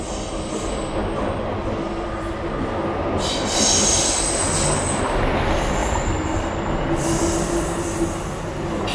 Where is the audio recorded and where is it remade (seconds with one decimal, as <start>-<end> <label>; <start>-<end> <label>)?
0.0-5.8 recorded; 5.8-6.5 remade; 6.5-8.9 recorded